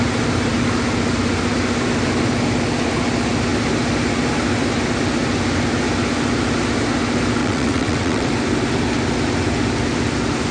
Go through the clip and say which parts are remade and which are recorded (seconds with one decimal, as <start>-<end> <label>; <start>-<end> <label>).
0.0-7.4 recorded; 7.4-8.3 remade; 8.3-10.5 recorded